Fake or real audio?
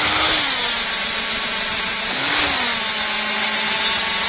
real